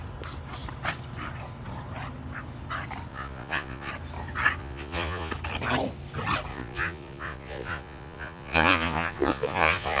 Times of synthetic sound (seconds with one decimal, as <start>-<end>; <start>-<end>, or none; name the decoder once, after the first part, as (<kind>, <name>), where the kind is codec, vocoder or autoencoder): 3.1-3.9 (vocoder, Vocos); 4.6-5.3; 6.5-10.0